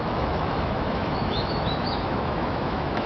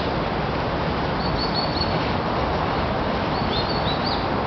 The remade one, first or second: first